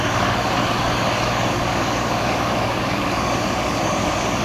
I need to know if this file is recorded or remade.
remade